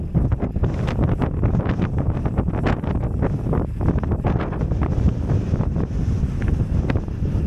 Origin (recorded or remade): recorded